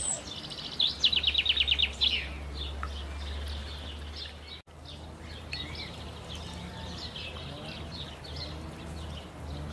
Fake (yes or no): no